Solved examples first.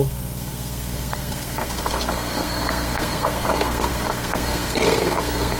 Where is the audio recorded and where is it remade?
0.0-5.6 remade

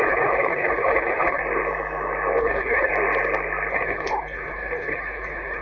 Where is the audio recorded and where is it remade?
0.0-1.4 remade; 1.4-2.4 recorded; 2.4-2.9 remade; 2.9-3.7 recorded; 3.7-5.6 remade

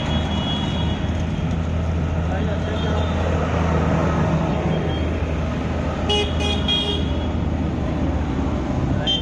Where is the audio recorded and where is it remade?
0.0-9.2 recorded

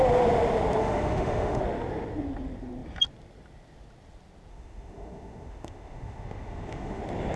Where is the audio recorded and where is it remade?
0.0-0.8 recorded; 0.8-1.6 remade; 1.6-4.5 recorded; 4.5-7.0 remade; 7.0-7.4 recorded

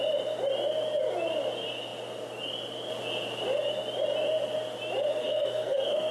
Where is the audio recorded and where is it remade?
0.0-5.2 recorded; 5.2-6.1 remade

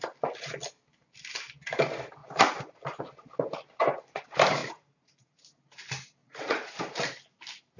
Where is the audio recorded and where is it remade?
0.0-2.2 recorded; 2.2-3.0 remade; 3.0-4.6 recorded; 4.6-5.5 remade; 5.5-6.2 recorded; 6.2-6.8 remade; 6.8-7.8 recorded

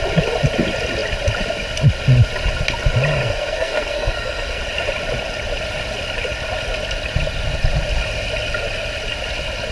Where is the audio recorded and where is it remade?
0.0-3.1 recorded; 3.1-4.6 remade; 4.6-9.7 recorded